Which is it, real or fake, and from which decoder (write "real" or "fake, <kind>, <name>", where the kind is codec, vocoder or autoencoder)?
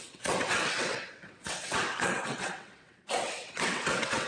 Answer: fake, vocoder, WaveNeXt